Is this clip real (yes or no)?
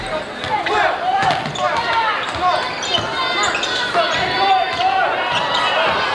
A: yes